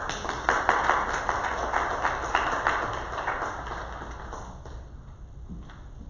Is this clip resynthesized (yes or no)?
no